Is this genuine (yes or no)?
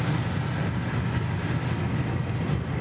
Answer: yes